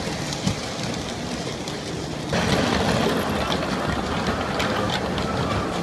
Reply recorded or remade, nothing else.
recorded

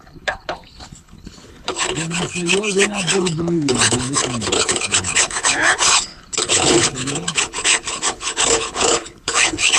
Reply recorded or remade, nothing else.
remade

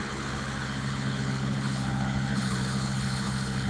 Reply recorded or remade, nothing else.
remade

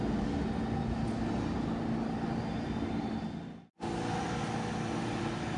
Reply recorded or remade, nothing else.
recorded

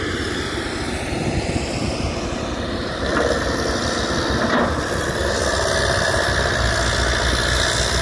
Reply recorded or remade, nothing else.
recorded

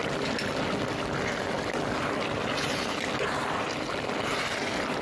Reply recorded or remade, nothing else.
recorded